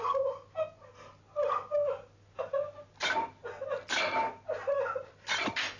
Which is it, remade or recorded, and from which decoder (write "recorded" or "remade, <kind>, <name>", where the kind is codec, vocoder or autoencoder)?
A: recorded